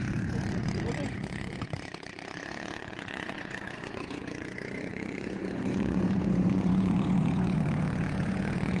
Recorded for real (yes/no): no